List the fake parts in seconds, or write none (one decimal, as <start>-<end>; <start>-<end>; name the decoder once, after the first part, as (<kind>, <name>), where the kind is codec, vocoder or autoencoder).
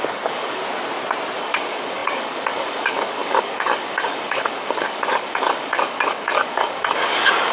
0.0-0.6 (codec, DAC); 1.4-7.5